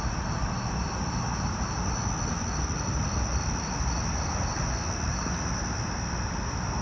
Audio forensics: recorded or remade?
recorded